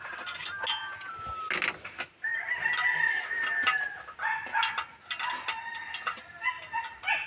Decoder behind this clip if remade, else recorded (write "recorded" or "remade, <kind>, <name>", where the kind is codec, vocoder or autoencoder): recorded